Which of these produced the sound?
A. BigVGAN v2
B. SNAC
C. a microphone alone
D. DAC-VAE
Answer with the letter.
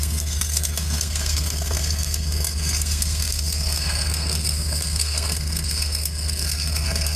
B